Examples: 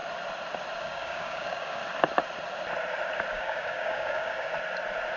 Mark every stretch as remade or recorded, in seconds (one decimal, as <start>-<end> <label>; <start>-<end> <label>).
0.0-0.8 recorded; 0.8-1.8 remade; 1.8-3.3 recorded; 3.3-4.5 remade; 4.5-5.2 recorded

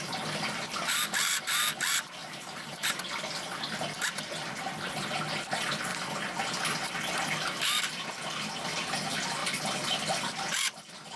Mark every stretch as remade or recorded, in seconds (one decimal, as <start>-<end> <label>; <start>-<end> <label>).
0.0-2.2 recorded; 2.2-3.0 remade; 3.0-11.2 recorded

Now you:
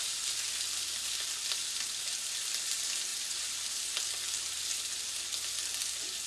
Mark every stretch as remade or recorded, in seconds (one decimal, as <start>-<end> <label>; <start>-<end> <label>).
0.0-3.1 recorded; 3.1-3.8 remade; 3.8-6.3 recorded

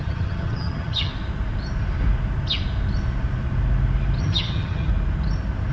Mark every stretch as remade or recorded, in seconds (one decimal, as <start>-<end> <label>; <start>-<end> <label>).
0.0-1.1 remade; 1.1-4.2 recorded; 4.2-4.9 remade; 4.9-5.7 recorded